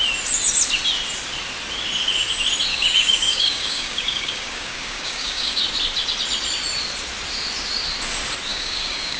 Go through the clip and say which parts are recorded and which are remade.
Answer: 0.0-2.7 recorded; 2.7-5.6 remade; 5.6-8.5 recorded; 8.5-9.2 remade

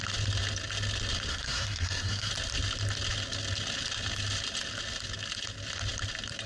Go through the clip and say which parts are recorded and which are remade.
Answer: 0.0-1.3 recorded; 1.3-2.3 remade; 2.3-6.5 recorded

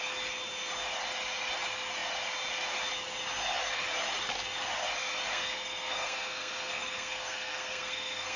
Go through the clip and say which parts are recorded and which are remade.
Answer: 0.0-5.3 recorded; 5.3-8.4 remade

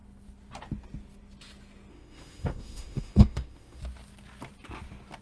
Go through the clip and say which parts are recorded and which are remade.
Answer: 0.0-1.9 recorded; 1.9-3.8 remade; 3.8-5.2 recorded

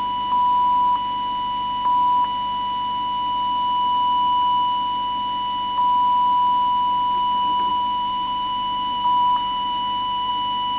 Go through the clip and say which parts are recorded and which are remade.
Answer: 0.0-7.7 recorded; 7.7-10.3 remade; 10.3-10.8 recorded